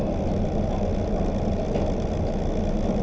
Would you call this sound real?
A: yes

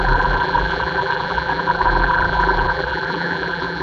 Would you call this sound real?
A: no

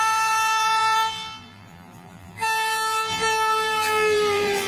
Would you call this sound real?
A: no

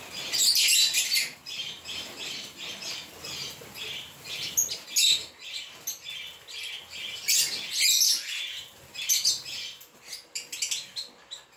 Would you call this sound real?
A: yes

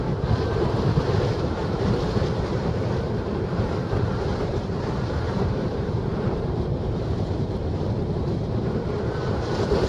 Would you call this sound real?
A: no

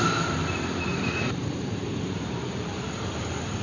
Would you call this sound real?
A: no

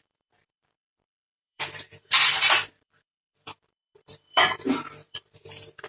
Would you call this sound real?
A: no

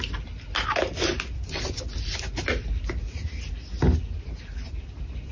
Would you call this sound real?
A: yes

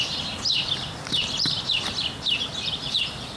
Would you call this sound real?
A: no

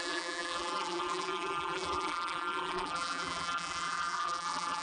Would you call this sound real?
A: no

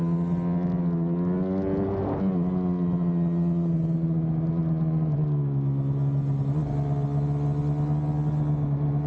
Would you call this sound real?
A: yes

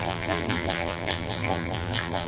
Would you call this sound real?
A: no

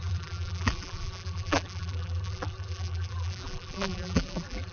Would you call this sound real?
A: no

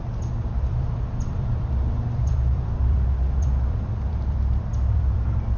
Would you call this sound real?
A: no